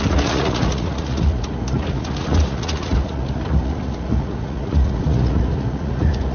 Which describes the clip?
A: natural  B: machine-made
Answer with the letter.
B